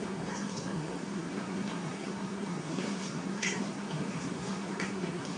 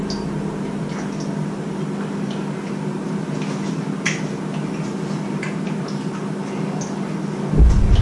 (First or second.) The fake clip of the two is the first